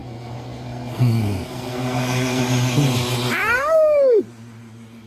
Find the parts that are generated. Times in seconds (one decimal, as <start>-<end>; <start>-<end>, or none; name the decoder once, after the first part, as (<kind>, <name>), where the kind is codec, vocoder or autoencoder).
0.0-2.4 (codec, SNAC); 3.4-4.2